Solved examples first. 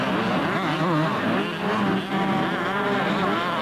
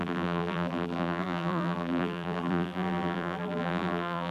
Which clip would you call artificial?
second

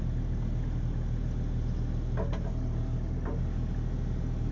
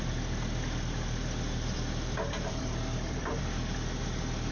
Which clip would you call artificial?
second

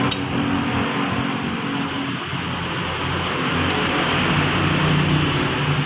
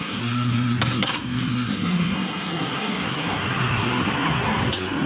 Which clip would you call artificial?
second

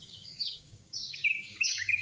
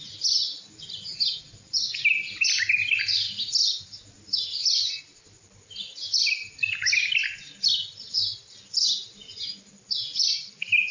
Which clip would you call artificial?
first